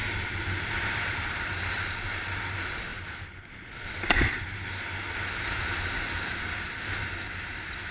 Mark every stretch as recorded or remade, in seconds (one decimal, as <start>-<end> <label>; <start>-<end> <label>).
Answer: 0.0-7.9 recorded